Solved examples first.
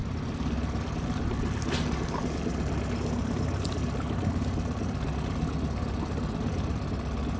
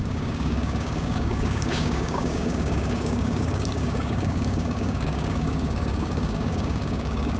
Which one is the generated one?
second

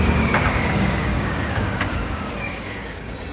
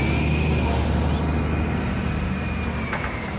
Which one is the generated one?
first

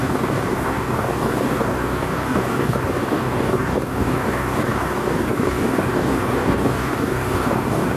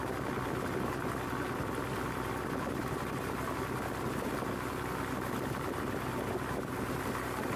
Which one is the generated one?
first